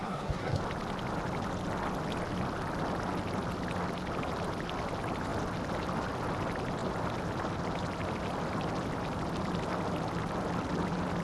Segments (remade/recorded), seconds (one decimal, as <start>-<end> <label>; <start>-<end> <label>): 0.0-0.6 remade; 0.6-11.2 recorded